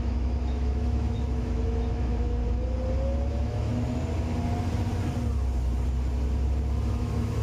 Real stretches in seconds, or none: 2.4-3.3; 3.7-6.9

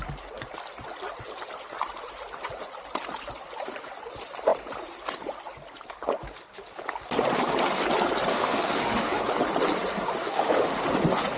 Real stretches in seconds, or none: 0.0-8.3; 9.2-10.2; 10.8-11.4

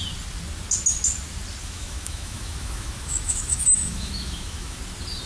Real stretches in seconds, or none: 0.0-1.6; 4.8-5.3